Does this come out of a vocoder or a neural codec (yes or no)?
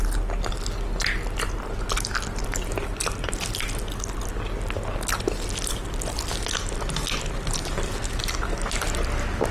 no